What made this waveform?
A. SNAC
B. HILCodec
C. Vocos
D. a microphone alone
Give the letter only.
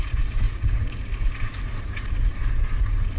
C